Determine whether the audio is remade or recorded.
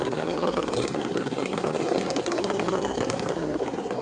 remade